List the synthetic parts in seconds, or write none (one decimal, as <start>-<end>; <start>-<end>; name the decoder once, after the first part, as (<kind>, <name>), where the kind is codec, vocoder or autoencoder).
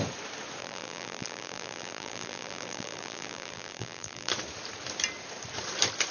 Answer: 0.6-4.3 (vocoder, BigVGAN v2)